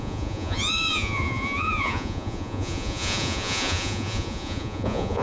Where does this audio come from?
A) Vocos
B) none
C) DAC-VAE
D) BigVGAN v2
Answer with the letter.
A